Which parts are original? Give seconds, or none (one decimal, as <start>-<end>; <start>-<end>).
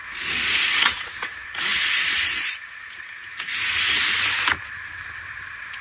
4.0-5.8